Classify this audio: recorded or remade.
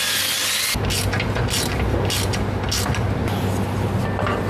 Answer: recorded